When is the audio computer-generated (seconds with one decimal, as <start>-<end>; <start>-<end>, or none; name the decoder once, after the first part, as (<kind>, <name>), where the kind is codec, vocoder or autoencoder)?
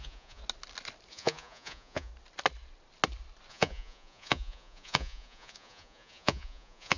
0.0-0.4 (vocoder, Vocos); 1.1-2.1; 3.5-7.0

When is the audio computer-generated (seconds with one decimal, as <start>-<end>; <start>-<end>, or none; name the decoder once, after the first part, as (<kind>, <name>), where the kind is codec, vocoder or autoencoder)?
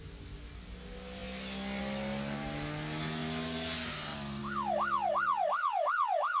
none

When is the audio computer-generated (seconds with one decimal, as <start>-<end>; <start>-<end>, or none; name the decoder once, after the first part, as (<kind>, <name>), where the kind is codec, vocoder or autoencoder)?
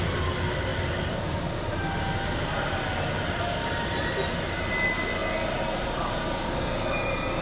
none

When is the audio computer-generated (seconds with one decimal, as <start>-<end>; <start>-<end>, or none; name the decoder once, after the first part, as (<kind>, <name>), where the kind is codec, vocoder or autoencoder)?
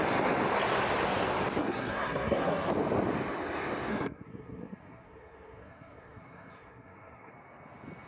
1.6-2.7 (codec, SNAC); 3.9-7.3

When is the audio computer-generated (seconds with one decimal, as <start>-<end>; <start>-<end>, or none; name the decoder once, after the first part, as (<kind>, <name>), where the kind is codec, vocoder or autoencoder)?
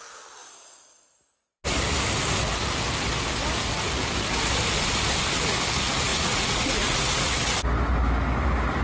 6.1-7.3 (vocoder, Vocos)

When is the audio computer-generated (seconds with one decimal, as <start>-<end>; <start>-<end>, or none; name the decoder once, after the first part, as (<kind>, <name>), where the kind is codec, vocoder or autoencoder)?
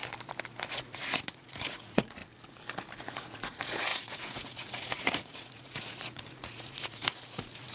0.7-2.2 (vocoder, Vocos); 3.0-7.7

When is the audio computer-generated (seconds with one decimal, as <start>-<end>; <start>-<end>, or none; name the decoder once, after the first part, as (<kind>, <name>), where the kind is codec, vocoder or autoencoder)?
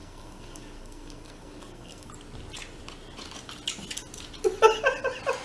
0.0-2.1 (codec, SNAC)